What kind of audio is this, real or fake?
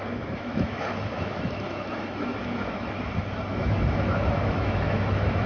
fake